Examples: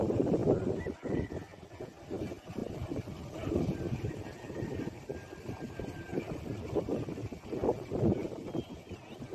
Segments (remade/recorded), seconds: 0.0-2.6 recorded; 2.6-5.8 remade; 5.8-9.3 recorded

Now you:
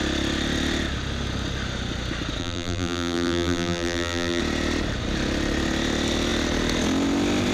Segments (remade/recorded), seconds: 0.0-2.4 recorded; 2.4-4.4 remade; 4.4-7.5 recorded